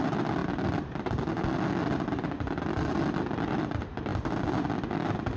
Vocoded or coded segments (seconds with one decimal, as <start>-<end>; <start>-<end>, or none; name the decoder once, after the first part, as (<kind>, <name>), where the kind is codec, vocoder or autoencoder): none